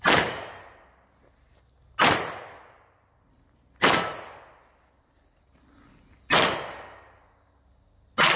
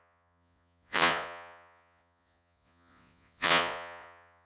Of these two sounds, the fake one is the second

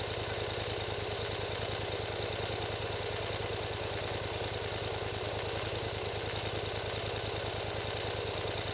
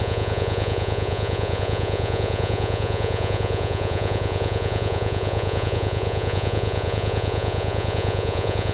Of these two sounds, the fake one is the second